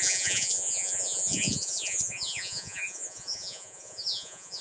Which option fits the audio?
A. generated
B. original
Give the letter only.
A